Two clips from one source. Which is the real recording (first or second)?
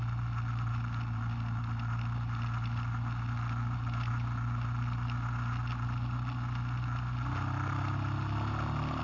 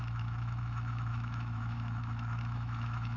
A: first